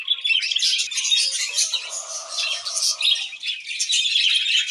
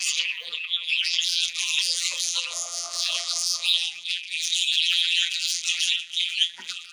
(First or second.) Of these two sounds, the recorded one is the first